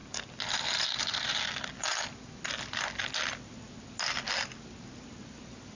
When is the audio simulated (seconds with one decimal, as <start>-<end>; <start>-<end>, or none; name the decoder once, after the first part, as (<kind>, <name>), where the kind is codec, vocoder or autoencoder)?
none

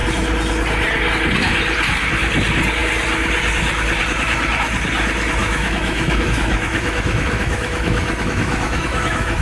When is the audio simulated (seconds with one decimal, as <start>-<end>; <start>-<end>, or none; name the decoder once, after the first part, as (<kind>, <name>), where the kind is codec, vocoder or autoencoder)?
5.4-9.4 (autoencoder, DAC-VAE)

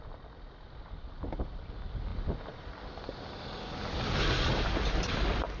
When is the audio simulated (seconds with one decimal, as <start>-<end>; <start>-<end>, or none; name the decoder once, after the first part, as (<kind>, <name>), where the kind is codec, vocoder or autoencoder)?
none

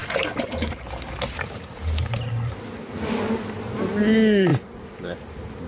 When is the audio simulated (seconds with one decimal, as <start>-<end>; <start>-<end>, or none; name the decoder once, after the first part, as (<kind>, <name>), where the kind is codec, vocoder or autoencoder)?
none

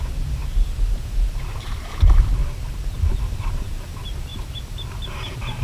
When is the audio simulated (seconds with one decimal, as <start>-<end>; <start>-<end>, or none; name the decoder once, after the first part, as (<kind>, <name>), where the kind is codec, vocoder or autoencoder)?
0.0-2.4 (vocoder, BigVGAN v2); 3.1-4.3; 5.1-5.6

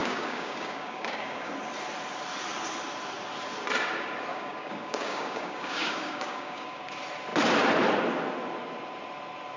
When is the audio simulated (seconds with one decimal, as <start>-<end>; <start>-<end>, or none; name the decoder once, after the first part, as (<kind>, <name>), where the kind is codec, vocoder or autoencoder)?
0.0-1.5 (codec, DAC); 4.3-6.8